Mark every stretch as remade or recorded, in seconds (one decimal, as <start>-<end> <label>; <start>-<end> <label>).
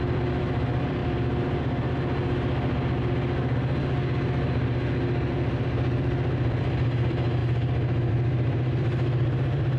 0.0-1.0 remade; 1.0-5.3 recorded; 5.3-7.4 remade; 7.4-8.1 recorded; 8.1-9.8 remade